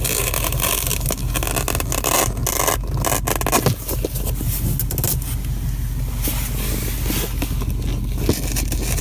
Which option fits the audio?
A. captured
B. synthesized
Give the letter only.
A